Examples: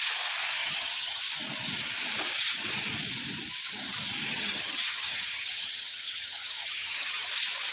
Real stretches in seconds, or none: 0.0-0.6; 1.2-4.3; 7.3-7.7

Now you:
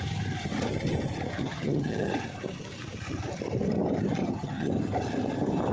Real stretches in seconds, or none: 0.0-1.4; 2.1-4.2; 4.7-5.7